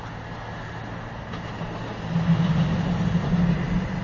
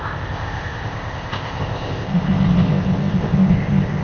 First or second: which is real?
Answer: first